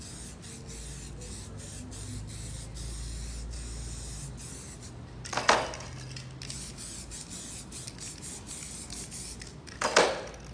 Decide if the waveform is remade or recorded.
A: recorded